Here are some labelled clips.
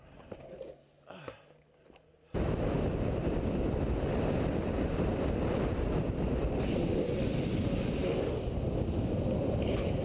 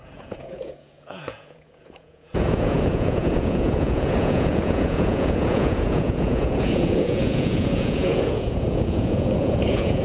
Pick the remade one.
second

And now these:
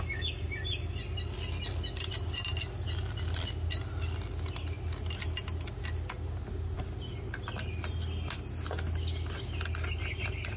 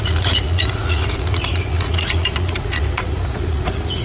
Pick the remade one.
second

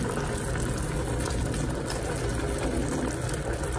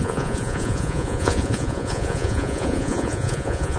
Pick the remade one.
second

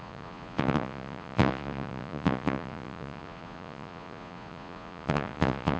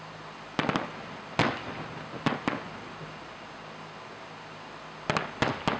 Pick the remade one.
first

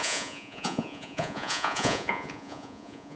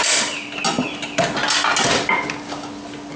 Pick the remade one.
first